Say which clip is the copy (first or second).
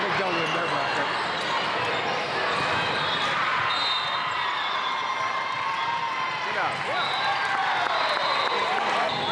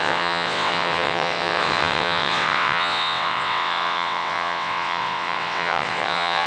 second